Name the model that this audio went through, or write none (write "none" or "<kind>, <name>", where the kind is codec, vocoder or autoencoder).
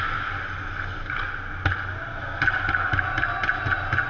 none